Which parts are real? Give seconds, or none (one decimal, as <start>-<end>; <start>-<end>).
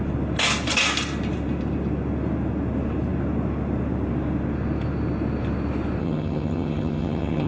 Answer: 0.0-6.0